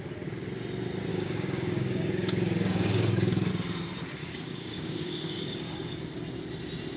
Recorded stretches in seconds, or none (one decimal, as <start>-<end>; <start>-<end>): 0.0-1.1; 3.5-4.2; 6.0-7.0